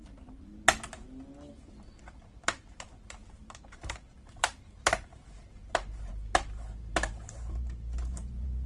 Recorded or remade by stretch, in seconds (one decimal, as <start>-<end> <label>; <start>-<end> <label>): 0.0-0.5 remade; 0.5-1.5 recorded; 1.5-8.7 remade